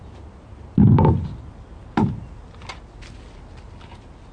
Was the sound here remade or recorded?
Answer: recorded